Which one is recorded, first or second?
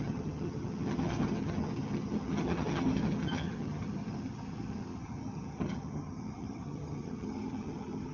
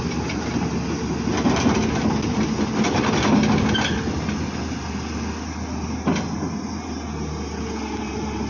second